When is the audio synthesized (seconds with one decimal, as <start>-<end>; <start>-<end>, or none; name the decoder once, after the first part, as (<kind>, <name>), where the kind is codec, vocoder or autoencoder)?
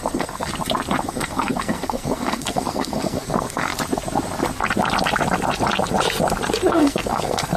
0.0-0.5 (codec, SNAC); 1.0-3.7; 6.7-7.6